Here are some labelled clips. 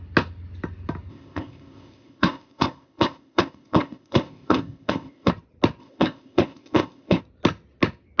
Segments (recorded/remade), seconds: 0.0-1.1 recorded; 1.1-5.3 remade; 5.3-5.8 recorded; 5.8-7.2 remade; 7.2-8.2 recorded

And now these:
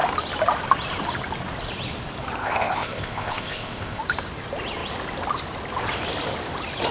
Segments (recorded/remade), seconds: 0.0-2.4 recorded; 2.4-4.0 remade; 4.0-6.9 recorded

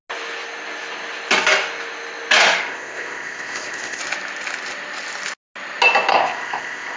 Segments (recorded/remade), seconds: 0.0-2.6 recorded; 2.6-4.0 remade; 4.0-6.1 recorded; 6.1-7.0 remade

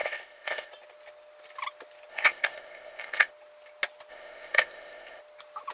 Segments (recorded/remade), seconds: 0.0-0.7 remade; 0.7-2.1 recorded; 2.1-3.3 remade; 3.3-4.1 recorded; 4.1-5.2 remade; 5.2-5.7 recorded

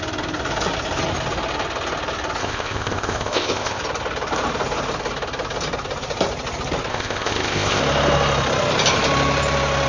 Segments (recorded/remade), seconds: 0.0-2.4 recorded; 2.4-3.8 remade; 3.8-6.9 recorded; 6.9-7.8 remade; 7.8-9.9 recorded

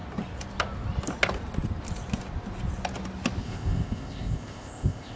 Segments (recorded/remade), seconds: 0.0-3.4 recorded; 3.4-5.2 remade

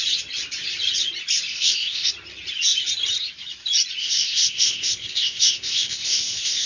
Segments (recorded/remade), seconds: 0.0-1.5 recorded; 1.5-2.1 remade; 2.1-4.0 recorded; 4.0-6.7 remade

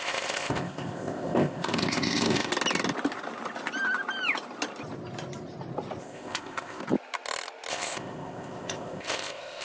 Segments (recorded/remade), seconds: 0.0-2.5 remade; 2.5-6.0 recorded; 6.0-6.8 remade; 6.8-7.7 recorded; 7.7-9.6 remade